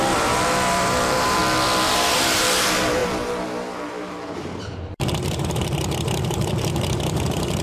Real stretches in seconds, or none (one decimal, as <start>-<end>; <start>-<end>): 1.4-1.9